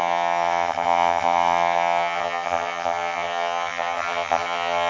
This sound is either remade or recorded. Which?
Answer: remade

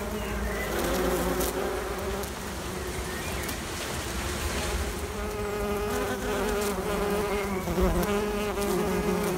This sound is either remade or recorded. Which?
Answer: recorded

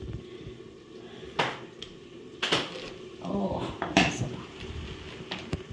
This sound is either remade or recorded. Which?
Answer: recorded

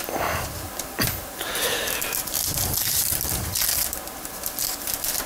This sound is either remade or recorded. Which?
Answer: recorded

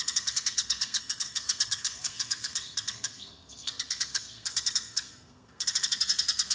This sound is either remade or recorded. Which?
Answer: remade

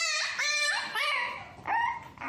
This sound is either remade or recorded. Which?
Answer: recorded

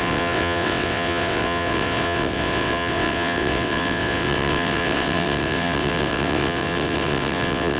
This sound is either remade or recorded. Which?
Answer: remade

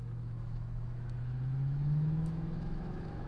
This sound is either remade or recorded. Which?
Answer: remade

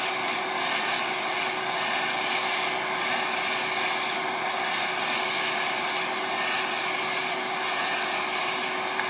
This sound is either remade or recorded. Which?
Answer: recorded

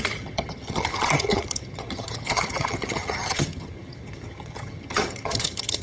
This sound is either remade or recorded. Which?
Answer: remade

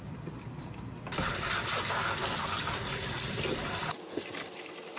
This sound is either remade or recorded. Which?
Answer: recorded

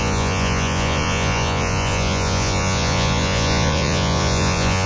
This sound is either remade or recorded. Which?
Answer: remade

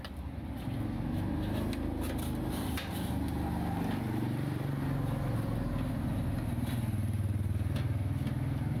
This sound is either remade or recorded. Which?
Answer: recorded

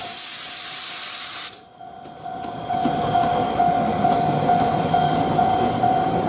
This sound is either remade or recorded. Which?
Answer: remade